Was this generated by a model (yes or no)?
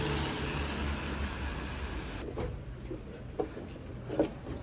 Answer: no